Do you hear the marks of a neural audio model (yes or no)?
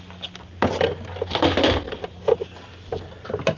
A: no